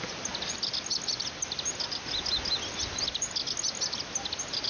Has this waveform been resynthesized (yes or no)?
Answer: no